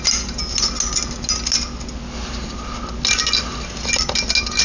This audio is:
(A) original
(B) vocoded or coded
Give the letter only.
A